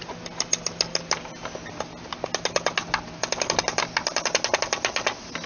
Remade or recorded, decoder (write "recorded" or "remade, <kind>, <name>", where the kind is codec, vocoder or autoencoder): recorded